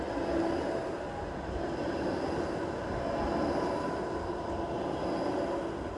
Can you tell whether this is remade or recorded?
recorded